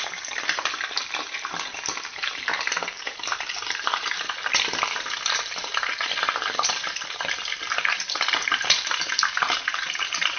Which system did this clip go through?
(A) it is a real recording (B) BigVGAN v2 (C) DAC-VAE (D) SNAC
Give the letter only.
B